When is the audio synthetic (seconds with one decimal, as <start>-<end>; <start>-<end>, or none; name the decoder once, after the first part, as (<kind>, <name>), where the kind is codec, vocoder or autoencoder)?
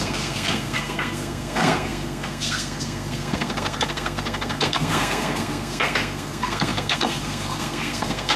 0.0-8.4 (codec, SNAC)